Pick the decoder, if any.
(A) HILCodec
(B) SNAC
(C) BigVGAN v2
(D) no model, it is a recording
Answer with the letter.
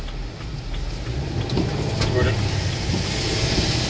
D